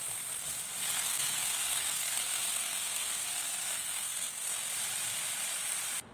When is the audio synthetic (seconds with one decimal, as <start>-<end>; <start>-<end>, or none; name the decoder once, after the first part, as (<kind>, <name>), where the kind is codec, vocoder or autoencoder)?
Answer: 0.8-4.5 (codec, SNAC)